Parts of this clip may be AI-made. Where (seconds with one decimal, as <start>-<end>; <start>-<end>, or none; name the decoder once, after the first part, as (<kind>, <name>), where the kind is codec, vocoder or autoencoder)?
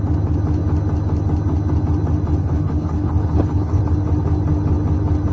2.4-3.8 (codec, HILCodec)